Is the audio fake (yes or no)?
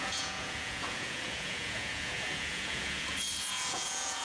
yes